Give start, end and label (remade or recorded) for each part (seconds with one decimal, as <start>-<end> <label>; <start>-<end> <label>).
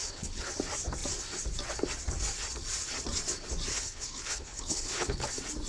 0.0-0.5 remade; 0.5-3.7 recorded; 3.7-5.3 remade; 5.3-5.7 recorded